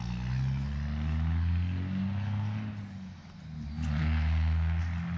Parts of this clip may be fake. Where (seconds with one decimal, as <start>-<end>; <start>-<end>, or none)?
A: 4.0-4.8